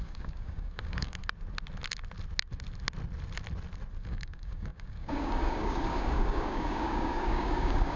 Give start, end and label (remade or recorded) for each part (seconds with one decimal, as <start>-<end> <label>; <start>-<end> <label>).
0.0-1.2 remade; 1.2-4.0 recorded; 4.0-8.0 remade

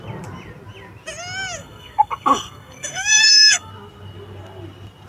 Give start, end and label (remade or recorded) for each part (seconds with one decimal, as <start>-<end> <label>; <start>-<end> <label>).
0.0-1.6 recorded; 1.6-3.7 remade; 3.7-5.1 recorded

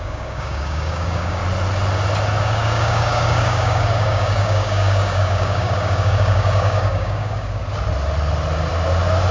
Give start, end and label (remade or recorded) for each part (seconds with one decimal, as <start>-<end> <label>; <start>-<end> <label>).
0.0-1.4 remade; 1.4-2.4 recorded; 2.4-7.6 remade; 7.6-9.3 recorded

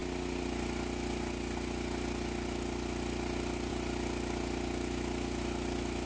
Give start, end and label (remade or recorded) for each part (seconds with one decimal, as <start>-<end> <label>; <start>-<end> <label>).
0.0-6.1 recorded

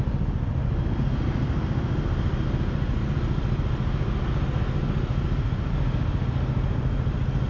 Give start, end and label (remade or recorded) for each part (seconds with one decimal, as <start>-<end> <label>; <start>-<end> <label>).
0.0-7.5 recorded

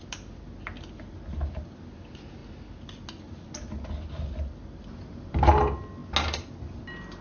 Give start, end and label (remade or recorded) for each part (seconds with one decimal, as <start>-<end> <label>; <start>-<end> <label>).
0.0-7.2 recorded